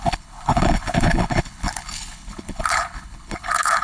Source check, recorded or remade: remade